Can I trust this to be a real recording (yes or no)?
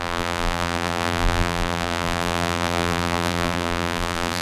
no